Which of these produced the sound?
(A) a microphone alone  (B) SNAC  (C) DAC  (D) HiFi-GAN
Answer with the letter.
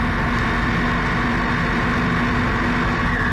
A